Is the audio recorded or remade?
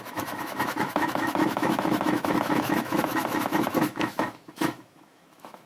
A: remade